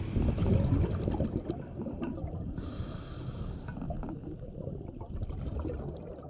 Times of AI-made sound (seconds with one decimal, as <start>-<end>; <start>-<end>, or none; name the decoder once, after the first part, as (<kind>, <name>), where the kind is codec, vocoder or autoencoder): 0.4-3.2 (vocoder, BigVGAN v2); 3.7-5.1